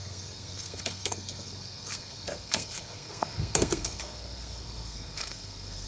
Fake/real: fake